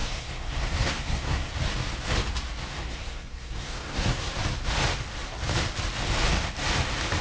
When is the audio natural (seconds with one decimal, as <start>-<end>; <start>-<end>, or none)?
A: 1.5-2.7; 4.3-7.2